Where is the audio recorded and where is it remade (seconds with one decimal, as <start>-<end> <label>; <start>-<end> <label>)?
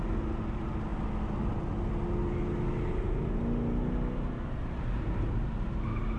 0.0-6.2 recorded